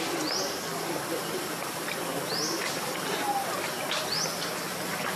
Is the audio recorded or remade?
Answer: recorded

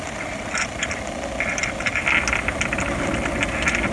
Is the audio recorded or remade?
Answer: recorded